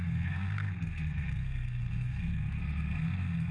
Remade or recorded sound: remade